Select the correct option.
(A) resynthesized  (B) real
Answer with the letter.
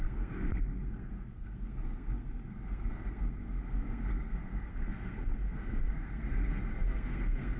A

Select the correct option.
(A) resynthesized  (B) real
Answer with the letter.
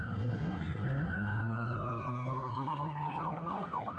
A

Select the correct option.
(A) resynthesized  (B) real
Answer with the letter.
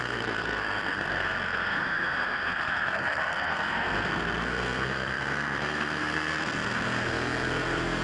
A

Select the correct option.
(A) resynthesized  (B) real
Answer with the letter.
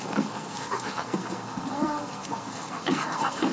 A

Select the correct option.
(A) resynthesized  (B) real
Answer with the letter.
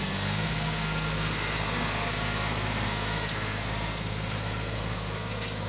A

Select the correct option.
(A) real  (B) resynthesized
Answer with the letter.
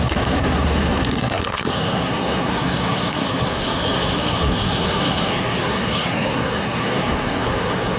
B